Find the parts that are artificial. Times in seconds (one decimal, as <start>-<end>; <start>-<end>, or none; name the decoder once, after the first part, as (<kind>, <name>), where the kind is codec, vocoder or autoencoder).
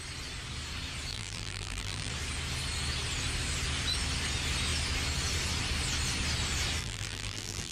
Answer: 1.1-2.1 (vocoder, BigVGAN v2); 6.8-7.7